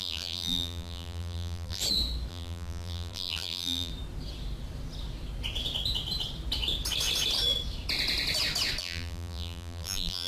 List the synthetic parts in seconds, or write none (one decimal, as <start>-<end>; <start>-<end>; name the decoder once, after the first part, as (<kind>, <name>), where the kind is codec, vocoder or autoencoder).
0.0-1.8 (vocoder, BigVGAN v2); 2.3-3.9; 8.8-10.3